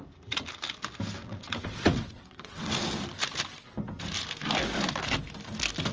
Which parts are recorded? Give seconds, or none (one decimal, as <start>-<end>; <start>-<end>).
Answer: 0.0-1.2; 2.7-5.9